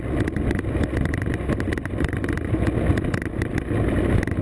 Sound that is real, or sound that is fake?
real